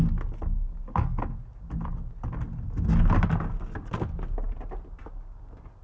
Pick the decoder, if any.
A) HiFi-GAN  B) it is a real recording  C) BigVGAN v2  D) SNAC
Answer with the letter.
B